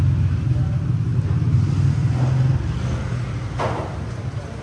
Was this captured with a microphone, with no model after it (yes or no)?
yes